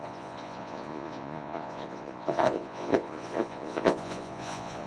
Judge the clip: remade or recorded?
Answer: remade